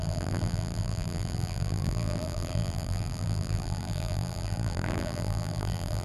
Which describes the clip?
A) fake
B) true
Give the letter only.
A